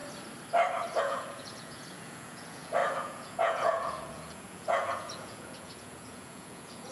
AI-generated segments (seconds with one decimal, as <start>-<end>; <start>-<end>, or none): 1.0-6.9